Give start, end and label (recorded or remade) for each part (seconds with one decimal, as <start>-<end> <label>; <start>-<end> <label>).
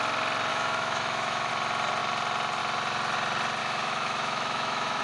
0.0-0.5 recorded; 0.5-1.5 remade; 1.5-3.6 recorded; 3.6-5.0 remade